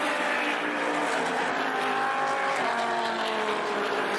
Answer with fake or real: real